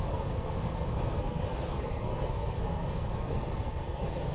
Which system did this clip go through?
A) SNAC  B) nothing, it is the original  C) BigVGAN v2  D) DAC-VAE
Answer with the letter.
A